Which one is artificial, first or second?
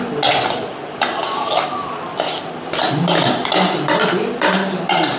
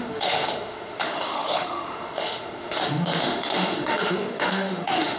second